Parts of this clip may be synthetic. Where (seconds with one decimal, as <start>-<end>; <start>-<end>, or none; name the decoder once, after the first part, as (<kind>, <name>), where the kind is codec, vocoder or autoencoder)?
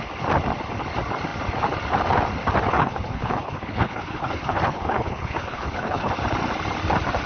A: 2.7-6.1 (codec, HILCodec)